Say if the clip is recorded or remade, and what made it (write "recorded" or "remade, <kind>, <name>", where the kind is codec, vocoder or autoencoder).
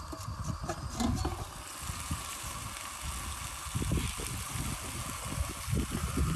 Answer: recorded